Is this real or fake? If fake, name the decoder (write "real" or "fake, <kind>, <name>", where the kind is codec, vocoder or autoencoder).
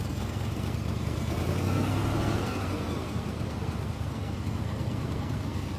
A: fake, codec, SNAC